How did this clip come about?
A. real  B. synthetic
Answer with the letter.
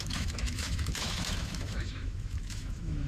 B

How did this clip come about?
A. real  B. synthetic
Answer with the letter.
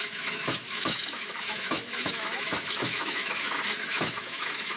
B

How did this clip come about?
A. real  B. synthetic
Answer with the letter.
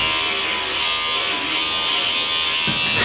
A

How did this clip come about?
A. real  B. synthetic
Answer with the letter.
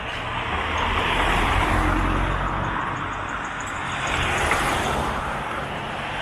A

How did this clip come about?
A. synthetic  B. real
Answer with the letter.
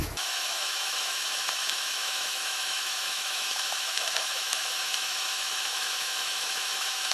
A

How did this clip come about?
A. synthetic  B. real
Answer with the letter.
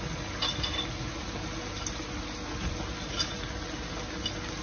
B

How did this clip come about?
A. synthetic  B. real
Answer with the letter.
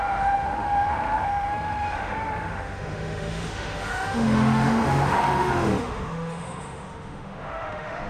A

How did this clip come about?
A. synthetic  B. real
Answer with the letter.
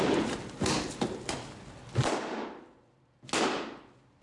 B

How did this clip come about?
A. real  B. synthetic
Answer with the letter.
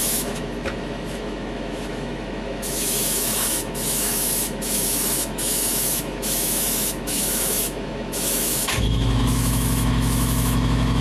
B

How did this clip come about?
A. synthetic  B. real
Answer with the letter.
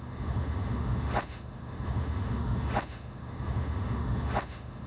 A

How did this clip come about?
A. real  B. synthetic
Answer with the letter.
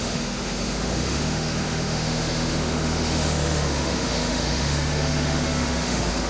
B